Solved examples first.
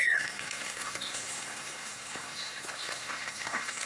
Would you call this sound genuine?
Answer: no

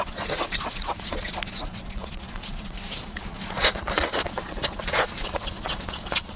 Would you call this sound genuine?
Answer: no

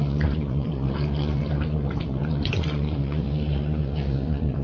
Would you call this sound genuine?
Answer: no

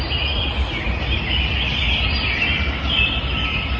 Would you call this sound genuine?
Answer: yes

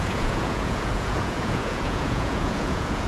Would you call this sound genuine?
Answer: no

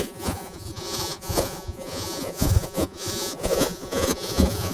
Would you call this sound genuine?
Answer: no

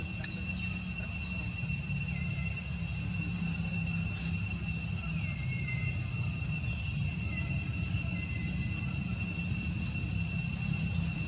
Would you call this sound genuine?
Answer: yes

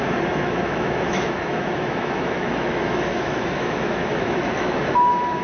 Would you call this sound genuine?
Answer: no